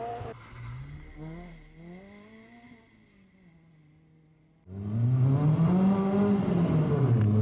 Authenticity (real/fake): real